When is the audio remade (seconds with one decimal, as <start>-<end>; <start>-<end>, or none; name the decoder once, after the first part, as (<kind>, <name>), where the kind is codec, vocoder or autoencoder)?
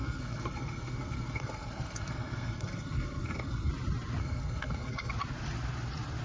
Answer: 0.0-3.7 (codec, SNAC); 4.2-5.1